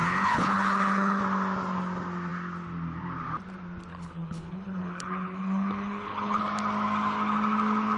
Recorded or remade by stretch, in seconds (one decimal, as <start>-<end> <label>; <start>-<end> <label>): 0.0-1.2 remade; 1.2-3.9 recorded; 3.9-6.4 remade; 6.4-8.0 recorded